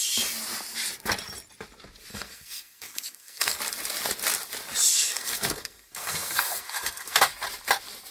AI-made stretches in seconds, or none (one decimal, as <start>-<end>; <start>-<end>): 2.1-3.6; 4.9-7.3